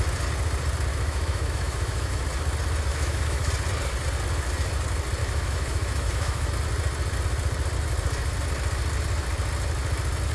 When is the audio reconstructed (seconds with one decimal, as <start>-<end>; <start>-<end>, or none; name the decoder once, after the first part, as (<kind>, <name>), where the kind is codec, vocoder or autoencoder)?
0.9-2.2 (autoencoder, DAC-VAE); 2.9-3.5; 5.2-6.5